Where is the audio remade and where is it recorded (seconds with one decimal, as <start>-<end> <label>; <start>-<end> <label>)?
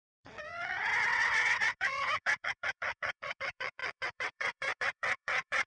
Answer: 0.0-5.7 remade